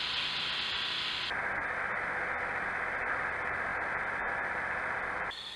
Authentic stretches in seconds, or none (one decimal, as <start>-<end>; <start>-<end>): 0.0-5.6